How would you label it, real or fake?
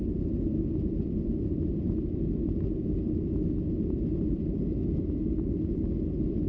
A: real